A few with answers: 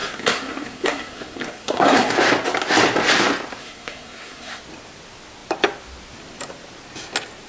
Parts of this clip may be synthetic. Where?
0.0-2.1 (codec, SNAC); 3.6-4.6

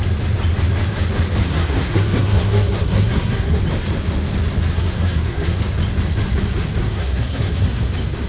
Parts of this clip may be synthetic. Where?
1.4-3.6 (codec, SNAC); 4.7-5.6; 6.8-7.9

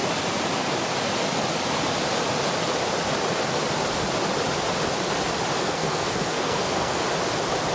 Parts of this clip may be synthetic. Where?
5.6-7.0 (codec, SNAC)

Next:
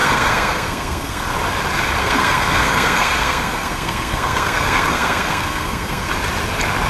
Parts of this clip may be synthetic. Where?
0.0-1.2 (codec, SNAC); 2.0-6.1

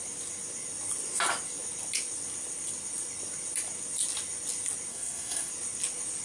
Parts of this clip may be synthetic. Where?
4.9-5.5 (codec, SNAC)

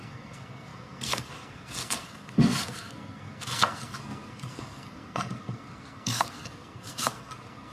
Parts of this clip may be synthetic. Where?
0.0-7.7 (codec, SNAC)

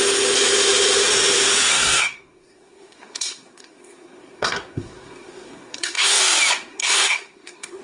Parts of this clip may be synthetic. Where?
1.7-6.2 (codec, SNAC); 6.7-7.8